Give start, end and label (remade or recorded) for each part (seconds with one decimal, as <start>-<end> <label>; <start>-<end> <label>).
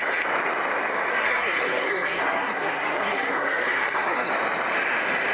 0.0-1.1 recorded; 1.1-4.3 remade; 4.3-5.3 recorded